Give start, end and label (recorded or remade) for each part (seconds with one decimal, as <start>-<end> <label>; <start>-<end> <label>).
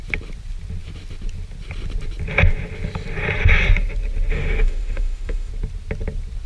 0.0-4.3 recorded; 4.3-5.5 remade; 5.5-6.5 recorded